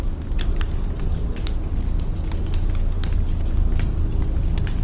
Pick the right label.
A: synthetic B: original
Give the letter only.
B